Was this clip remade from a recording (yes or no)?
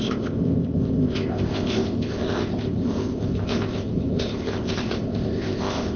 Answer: yes